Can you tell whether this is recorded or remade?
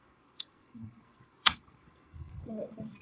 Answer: remade